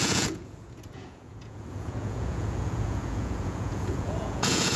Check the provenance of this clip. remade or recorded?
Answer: remade